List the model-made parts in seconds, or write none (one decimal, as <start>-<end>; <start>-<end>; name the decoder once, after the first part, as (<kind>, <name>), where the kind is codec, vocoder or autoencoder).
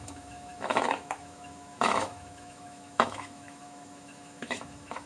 0.0-5.1 (autoencoder, DAC-VAE)